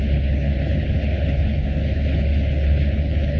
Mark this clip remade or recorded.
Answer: remade